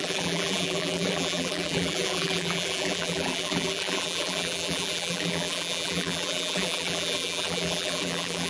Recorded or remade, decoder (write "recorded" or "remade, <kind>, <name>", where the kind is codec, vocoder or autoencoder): remade, vocoder, BigVGAN v2